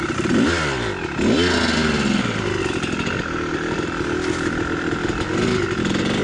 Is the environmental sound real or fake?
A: real